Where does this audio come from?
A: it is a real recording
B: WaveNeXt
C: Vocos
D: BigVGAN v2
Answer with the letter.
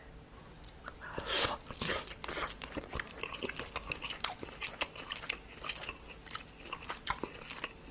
A